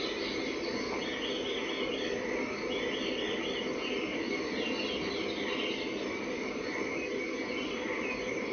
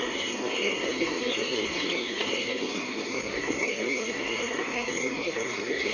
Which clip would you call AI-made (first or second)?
second